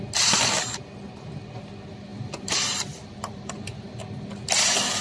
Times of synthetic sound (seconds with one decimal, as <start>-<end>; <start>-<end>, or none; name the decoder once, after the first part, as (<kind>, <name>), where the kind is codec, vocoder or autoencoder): 2.1-4.0 (vocoder, BigVGAN v2)